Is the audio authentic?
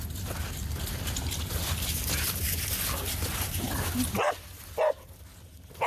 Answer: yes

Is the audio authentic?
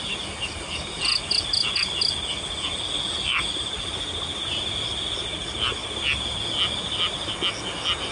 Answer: yes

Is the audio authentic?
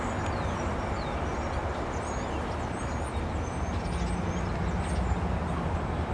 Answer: yes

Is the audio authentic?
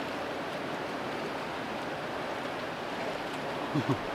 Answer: yes